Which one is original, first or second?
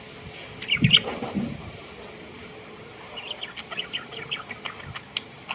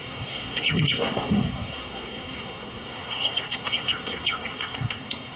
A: first